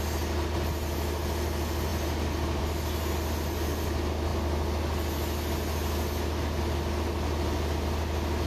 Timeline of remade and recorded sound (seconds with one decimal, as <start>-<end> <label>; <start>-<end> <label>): 0.0-8.5 recorded